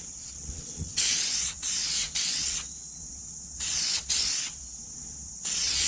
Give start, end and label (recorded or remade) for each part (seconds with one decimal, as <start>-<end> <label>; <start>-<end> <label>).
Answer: 0.0-5.9 remade